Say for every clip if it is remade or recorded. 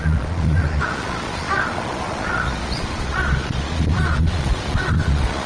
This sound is remade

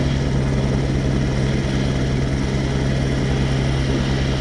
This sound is recorded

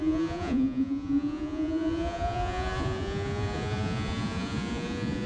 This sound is remade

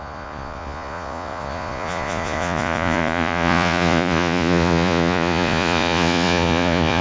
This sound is remade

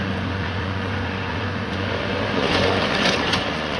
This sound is remade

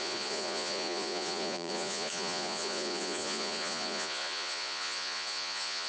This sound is remade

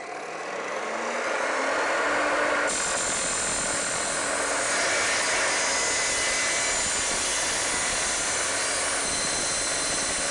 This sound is recorded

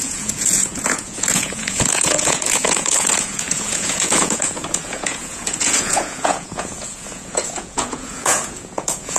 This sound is remade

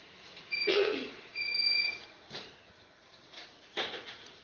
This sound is remade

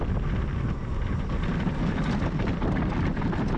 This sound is recorded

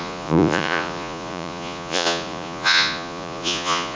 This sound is remade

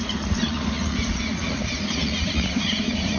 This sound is remade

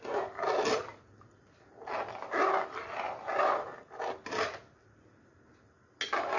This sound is recorded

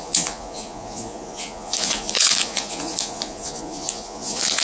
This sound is remade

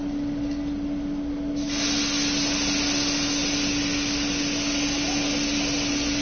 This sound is recorded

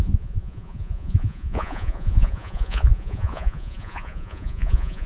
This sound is remade